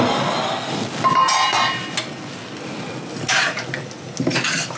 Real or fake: real